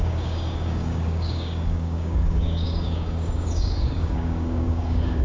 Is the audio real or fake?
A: fake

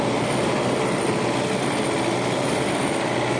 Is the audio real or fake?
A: real